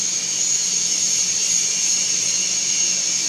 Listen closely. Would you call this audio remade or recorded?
remade